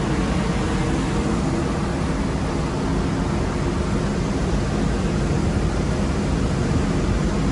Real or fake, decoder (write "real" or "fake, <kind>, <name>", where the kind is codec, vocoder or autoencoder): real